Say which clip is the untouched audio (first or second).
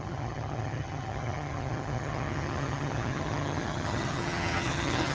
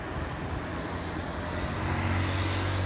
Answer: second